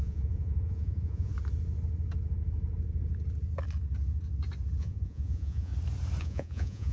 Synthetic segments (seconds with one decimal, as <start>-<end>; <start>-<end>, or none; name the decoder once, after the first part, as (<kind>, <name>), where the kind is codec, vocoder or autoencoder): 0.0-1.3 (vocoder, Vocos); 4.8-5.7; 6.2-6.9